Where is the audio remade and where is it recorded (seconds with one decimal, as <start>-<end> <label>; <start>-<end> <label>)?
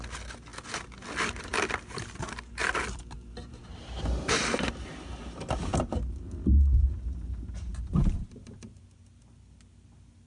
0.0-7.7 recorded; 7.7-8.8 remade; 8.8-10.3 recorded